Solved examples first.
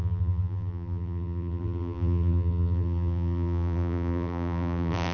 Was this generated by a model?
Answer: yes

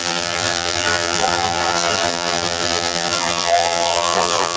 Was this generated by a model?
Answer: yes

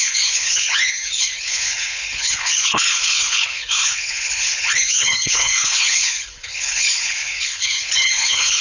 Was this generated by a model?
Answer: yes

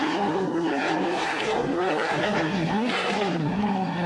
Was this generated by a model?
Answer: yes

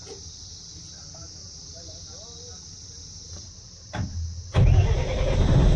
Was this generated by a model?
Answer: no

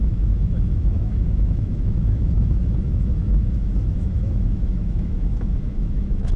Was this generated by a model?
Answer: yes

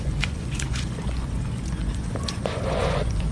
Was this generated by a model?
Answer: yes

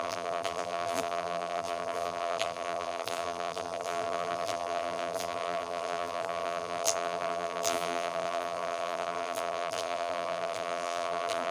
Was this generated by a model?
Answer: yes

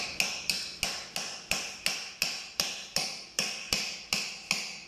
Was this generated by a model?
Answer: no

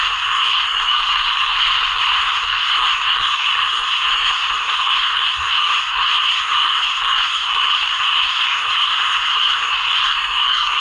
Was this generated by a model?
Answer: yes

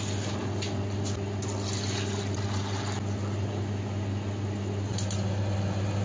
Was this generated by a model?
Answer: no